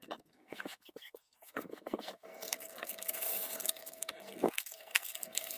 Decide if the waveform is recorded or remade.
remade